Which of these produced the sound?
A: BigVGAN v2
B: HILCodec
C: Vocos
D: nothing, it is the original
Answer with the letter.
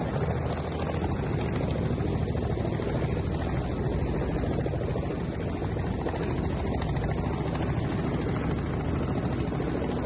D